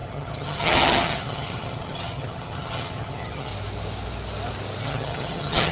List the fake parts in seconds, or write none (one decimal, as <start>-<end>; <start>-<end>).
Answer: 0.0-3.5; 4.8-5.7